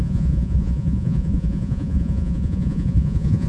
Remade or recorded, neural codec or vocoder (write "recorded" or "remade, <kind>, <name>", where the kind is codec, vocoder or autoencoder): remade, vocoder, Vocos